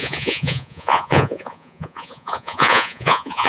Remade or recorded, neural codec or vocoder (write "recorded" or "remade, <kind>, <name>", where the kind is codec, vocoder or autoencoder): remade, vocoder, Vocos